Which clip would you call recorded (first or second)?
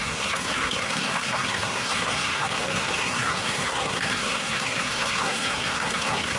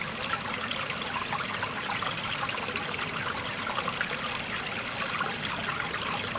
second